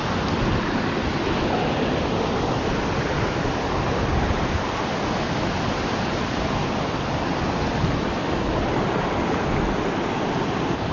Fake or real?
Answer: real